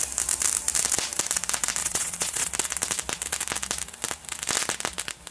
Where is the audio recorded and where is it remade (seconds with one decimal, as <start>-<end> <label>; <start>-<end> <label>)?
0.0-1.8 recorded; 1.8-2.5 remade; 2.5-5.3 recorded